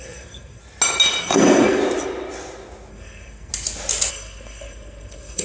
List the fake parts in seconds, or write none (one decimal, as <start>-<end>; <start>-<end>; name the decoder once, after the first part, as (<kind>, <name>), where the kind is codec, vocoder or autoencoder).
0.0-0.6 (codec, SNAC); 1.2-1.8; 2.9-3.5; 4.1-5.4